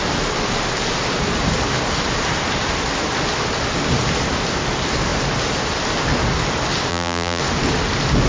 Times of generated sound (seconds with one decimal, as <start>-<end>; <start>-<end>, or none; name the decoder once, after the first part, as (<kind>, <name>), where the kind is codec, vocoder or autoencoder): 6.9-7.4 (vocoder, BigVGAN v2)